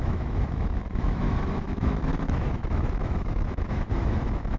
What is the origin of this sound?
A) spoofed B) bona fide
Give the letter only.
A